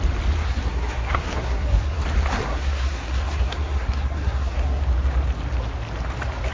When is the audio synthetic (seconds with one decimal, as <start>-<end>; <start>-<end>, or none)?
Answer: 0.4-2.0; 2.5-4.8